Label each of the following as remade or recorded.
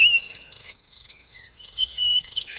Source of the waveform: remade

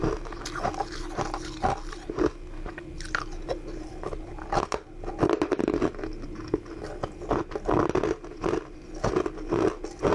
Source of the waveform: recorded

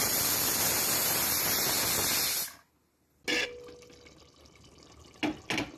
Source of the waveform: recorded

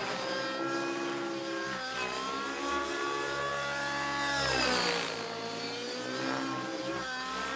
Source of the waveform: recorded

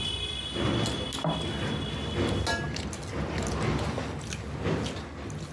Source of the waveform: recorded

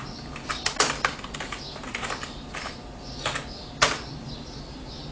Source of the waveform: recorded